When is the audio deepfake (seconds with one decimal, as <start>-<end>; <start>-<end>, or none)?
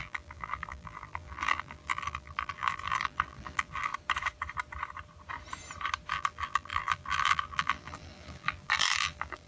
0.0-3.9; 6.1-9.5